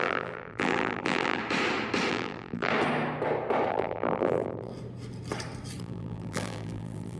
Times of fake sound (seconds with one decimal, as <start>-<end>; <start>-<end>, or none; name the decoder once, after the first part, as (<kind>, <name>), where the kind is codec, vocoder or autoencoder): 0.0-1.4 (vocoder, BigVGAN v2); 2.1-2.7; 3.7-4.7; 5.8-7.2

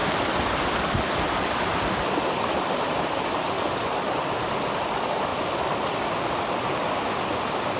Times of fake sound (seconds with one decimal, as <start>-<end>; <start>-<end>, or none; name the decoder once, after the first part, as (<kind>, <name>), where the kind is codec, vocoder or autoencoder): 5.3-6.5 (vocoder, BigVGAN v2)

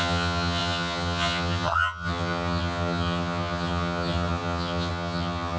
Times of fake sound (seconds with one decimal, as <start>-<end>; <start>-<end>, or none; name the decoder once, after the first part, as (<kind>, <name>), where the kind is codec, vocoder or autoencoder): 0.0-5.6 (vocoder, HiFi-GAN)

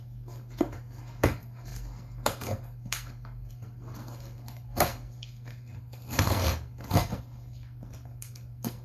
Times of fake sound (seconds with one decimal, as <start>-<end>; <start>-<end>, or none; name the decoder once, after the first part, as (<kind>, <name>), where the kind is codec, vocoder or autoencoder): 0.0-8.8 (codec, SNAC)

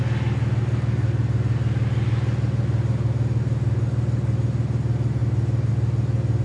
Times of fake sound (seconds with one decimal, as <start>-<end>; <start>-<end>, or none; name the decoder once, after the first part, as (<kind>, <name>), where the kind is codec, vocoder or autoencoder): none

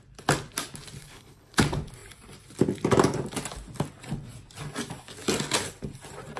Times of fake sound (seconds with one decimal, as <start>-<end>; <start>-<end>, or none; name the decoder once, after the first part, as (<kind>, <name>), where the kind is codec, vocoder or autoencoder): 1.0-1.6 (codec, HILCodec)

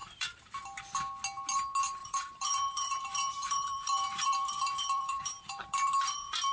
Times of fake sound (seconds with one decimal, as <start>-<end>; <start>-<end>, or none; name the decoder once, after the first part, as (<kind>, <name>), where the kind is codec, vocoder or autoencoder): 0.0-0.6 (vocoder, BigVGAN v2); 2.0-5.9